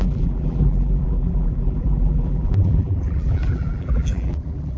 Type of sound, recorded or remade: remade